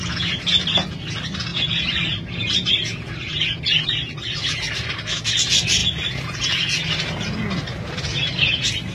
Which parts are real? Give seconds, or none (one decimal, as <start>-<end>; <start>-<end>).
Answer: 0.0-1.5; 2.7-8.9